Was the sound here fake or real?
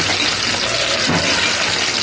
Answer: real